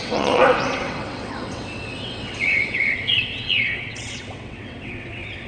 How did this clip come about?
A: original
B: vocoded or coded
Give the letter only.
B